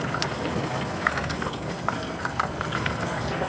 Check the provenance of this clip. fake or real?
fake